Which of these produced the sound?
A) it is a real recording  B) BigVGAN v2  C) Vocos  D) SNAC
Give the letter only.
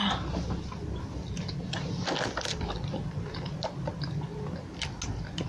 A